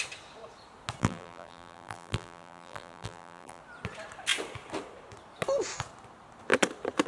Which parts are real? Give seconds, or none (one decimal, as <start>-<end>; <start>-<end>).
0.0-1.0; 3.6-7.1